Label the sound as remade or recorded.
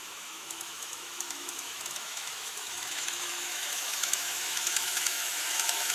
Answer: remade